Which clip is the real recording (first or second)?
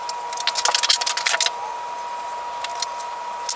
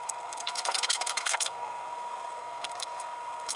first